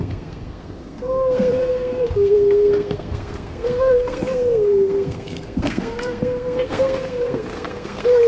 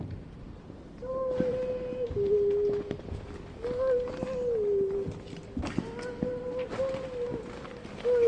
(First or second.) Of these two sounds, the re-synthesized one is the first